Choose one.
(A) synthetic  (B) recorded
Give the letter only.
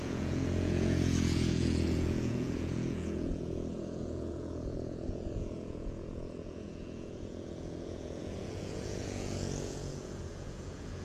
A